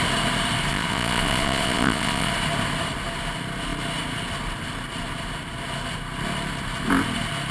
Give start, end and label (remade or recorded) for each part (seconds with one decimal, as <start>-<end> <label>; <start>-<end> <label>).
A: 0.0-0.7 recorded; 0.7-2.3 remade; 2.3-7.5 recorded